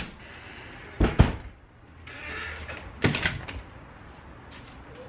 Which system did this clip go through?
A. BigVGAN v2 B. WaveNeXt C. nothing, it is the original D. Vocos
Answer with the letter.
C